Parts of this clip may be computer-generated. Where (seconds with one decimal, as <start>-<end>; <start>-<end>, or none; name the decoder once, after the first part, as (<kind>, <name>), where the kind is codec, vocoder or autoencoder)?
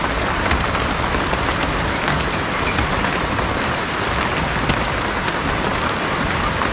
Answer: none